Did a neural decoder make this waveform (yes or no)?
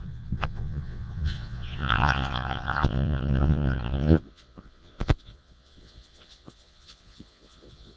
yes